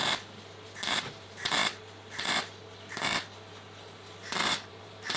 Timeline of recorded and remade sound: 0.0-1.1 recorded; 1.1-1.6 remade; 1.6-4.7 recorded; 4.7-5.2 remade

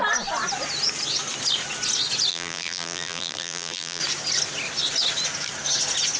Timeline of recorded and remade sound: 0.0-2.3 recorded; 2.3-4.0 remade; 4.0-6.2 recorded

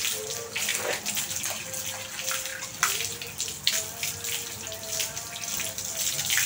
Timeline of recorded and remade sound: 0.0-6.5 recorded

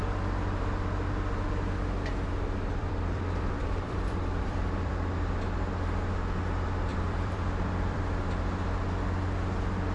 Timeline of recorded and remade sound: 0.0-2.8 recorded; 2.8-4.9 remade; 4.9-6.9 recorded; 6.9-8.0 remade; 8.0-9.9 recorded